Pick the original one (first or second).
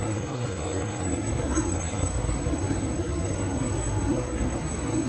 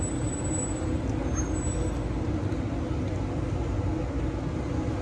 second